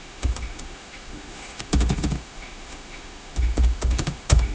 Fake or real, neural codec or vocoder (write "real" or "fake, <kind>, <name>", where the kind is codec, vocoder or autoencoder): fake, autoencoder, DAC-VAE